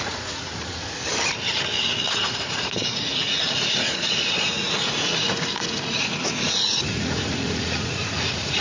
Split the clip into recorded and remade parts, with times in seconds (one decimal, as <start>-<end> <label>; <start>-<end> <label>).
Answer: 0.0-1.0 remade; 1.0-2.1 recorded; 2.1-8.6 remade